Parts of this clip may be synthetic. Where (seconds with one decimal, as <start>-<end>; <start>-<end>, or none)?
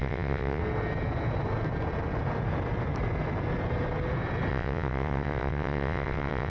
0.0-0.6; 4.5-6.5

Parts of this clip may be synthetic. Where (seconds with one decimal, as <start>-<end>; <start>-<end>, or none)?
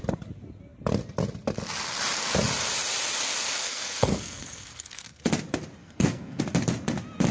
3.6-5.2; 5.8-6.4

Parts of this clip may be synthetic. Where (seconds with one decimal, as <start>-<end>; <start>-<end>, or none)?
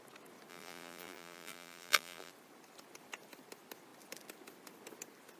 0.5-2.3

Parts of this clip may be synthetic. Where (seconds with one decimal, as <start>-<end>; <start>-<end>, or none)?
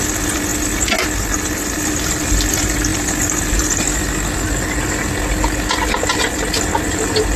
none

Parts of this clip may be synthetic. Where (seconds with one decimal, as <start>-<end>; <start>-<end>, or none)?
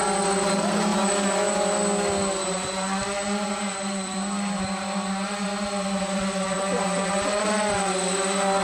2.4-7.5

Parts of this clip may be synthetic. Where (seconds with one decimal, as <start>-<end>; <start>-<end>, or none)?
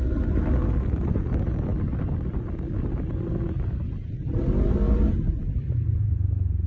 none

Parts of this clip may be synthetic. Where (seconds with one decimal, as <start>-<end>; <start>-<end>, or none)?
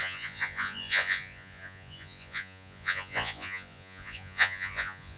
0.0-5.2